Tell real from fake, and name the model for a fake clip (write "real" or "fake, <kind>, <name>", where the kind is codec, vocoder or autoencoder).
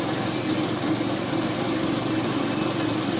real